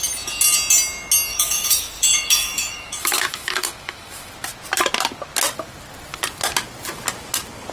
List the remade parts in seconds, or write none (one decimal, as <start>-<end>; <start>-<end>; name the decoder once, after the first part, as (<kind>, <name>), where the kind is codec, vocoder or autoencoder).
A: 1.3-4.3 (autoencoder, DAC-VAE)